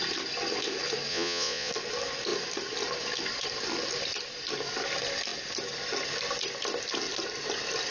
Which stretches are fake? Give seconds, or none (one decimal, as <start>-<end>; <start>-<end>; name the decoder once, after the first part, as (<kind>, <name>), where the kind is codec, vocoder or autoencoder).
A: 1.1-1.7 (vocoder, Vocos)